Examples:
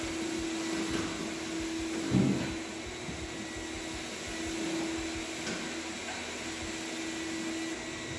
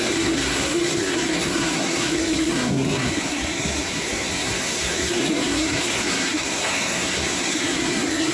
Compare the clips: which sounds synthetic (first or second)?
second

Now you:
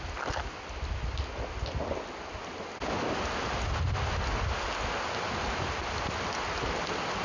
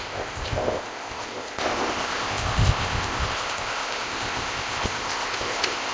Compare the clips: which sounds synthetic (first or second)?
second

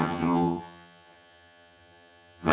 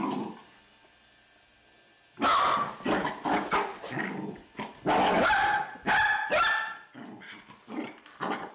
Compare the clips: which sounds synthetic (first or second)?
first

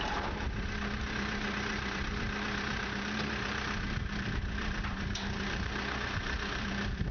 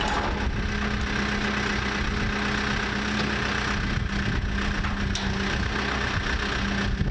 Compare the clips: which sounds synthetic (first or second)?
first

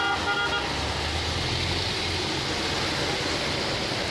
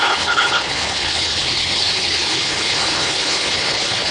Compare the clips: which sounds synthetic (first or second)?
second